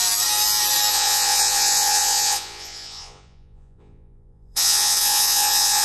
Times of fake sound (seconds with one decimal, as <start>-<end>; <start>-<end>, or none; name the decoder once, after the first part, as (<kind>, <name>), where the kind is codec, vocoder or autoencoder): 0.9-5.8 (vocoder, Vocos)